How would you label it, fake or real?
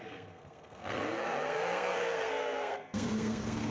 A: fake